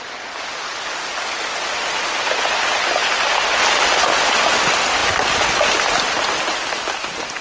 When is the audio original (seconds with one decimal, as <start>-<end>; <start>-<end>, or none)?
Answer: 0.0-7.4